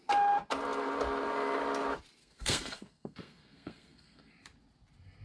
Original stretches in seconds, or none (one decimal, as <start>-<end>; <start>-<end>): 0.0-2.2; 4.3-5.2